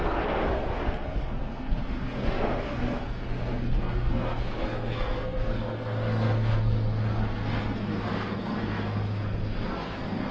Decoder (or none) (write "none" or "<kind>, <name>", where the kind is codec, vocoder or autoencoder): codec, SNAC